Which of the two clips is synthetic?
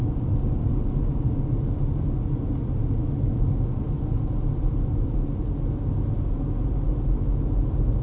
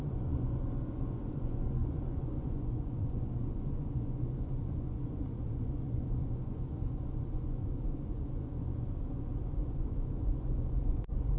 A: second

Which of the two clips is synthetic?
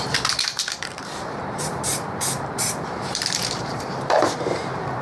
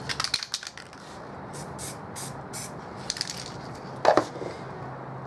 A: first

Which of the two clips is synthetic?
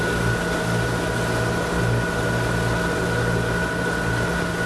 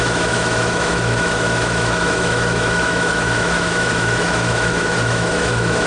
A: second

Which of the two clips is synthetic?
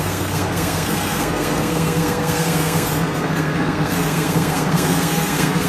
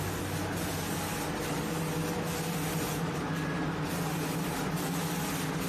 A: first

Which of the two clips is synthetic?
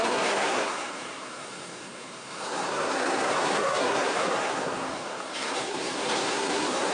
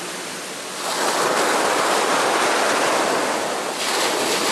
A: first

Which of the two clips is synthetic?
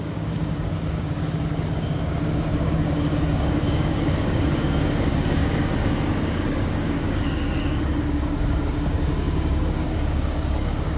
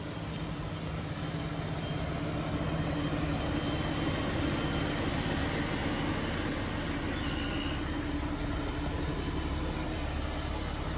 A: first